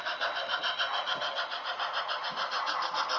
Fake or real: real